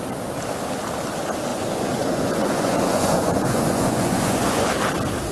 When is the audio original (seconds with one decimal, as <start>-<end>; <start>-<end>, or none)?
0.0-1.5; 4.7-5.3